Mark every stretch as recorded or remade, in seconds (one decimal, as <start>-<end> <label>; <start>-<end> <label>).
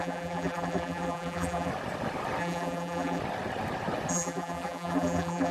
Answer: 0.0-1.7 remade; 1.7-2.4 recorded; 2.4-3.2 remade; 3.2-4.1 recorded; 4.1-5.5 remade